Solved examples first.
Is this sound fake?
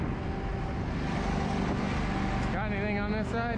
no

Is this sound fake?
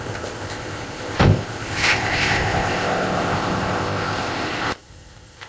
yes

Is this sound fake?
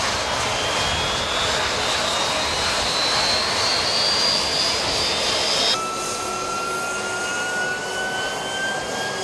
no